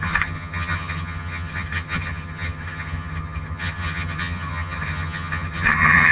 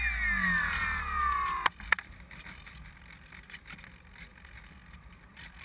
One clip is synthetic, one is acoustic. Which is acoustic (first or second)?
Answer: second